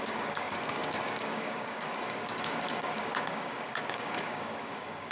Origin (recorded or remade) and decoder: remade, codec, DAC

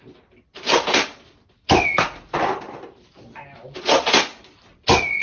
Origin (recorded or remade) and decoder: recorded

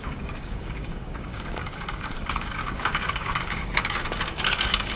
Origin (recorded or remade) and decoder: remade, codec, DAC